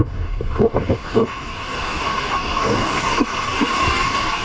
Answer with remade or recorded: remade